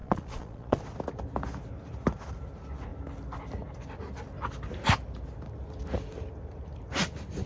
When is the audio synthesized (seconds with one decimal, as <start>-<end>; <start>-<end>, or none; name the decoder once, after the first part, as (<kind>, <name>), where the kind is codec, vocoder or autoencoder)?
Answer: 0.0-0.8 (vocoder, Vocos)